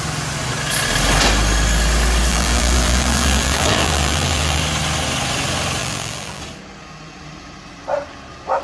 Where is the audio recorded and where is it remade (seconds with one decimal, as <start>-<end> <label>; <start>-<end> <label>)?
0.0-2.3 recorded; 2.3-4.6 remade; 4.6-5.8 recorded; 5.8-6.4 remade; 6.4-8.6 recorded